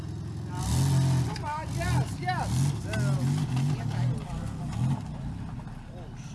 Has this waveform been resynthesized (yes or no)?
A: no